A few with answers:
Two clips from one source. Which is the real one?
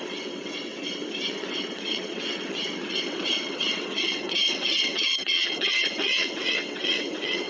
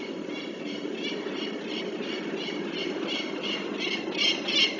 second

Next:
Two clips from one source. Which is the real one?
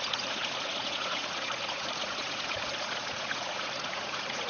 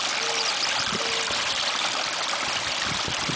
second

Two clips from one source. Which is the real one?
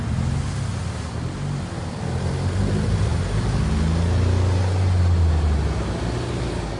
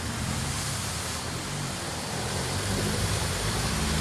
first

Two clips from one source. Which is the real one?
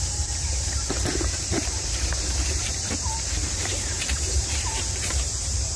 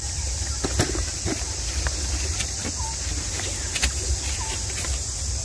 second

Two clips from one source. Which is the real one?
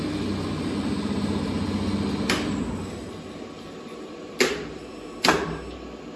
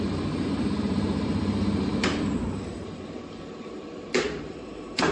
first